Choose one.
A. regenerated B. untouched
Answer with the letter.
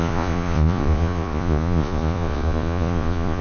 A